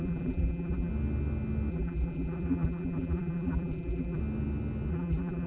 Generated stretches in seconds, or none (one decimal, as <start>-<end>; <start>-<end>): 0.0-0.9; 1.7-4.2; 4.9-5.5